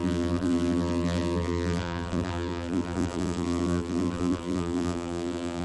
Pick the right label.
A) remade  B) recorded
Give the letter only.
A